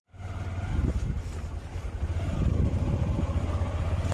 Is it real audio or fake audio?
real